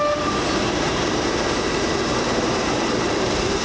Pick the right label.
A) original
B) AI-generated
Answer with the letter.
B